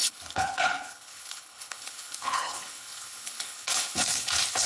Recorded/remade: remade